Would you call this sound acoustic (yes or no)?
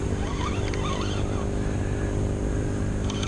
yes